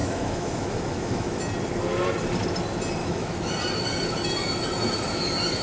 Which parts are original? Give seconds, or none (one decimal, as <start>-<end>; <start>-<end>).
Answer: 1.4-3.0; 3.5-5.6